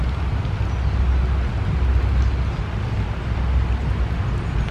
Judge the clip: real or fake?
real